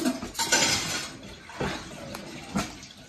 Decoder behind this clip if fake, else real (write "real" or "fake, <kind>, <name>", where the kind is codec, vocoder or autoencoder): real